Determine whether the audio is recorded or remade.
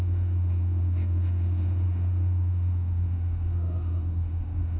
remade